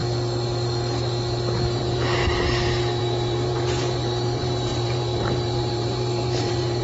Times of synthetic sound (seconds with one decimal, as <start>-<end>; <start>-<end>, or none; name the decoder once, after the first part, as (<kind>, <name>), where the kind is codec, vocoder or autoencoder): 1.8-2.2 (vocoder, BigVGAN v2); 3.0-6.8